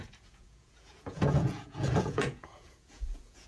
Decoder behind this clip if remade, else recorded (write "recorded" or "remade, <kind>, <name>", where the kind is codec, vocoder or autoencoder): remade, vocoder, Vocos